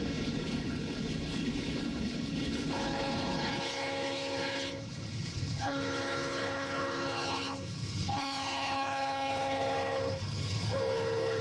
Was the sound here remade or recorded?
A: remade